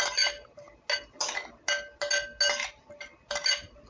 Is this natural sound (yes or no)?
yes